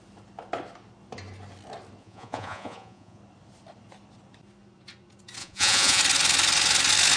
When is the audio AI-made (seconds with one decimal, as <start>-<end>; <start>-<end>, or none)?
2.0-3.2; 5.4-6.0

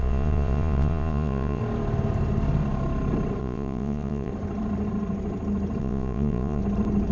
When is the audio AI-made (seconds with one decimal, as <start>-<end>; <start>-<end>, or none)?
0.0-1.6; 3.4-4.3; 5.8-6.6

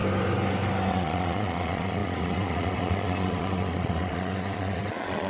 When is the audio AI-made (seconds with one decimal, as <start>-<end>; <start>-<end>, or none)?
0.9-5.3

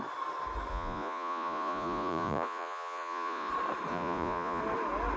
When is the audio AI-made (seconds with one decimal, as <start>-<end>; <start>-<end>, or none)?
0.7-3.5; 3.9-4.6

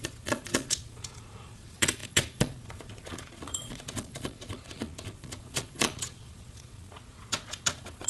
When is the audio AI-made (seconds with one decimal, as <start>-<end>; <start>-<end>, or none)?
0.0-8.1

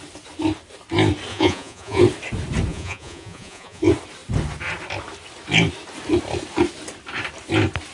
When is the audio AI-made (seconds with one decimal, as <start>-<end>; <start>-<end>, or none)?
1.3-2.0; 2.7-3.8

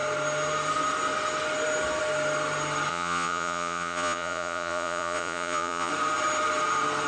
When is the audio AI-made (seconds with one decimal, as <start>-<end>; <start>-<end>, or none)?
2.9-5.9

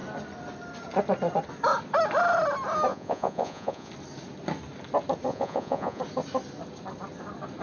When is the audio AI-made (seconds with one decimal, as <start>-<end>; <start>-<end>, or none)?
2.9-3.9; 5.3-6.0